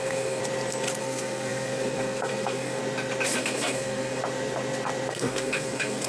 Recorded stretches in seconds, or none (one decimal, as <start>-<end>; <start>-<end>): 0.4-1.0; 2.8-3.4; 4.2-5.1